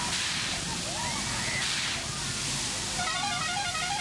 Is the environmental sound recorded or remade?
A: remade